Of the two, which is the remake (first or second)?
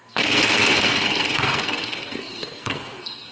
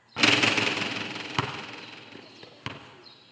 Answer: first